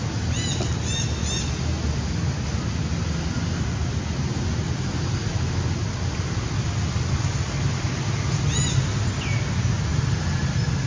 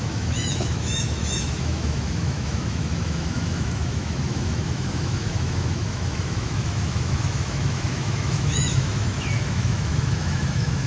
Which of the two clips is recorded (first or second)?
first